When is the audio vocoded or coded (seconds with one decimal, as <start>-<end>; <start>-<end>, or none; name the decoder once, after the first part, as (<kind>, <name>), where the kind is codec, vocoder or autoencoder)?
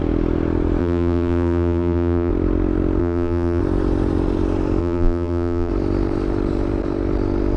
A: 0.8-2.3 (vocoder, BigVGAN v2); 3.0-3.6; 4.8-5.7